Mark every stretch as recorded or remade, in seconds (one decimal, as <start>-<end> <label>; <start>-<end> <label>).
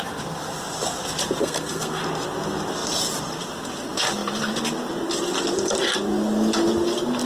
0.0-1.4 recorded; 1.4-2.0 remade; 2.0-7.2 recorded